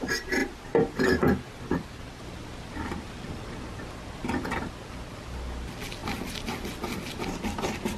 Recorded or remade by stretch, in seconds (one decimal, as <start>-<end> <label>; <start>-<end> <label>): 0.0-8.0 recorded